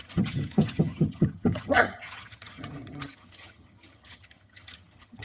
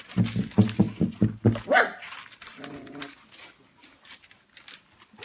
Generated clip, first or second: first